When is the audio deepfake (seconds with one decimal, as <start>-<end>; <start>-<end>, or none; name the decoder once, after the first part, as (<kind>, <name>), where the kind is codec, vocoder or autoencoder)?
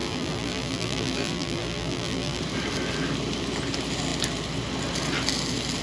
0.0-2.4 (vocoder, BigVGAN v2)